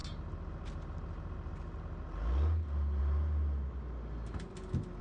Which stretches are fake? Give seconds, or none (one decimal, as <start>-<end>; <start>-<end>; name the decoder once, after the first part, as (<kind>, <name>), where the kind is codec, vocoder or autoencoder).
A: none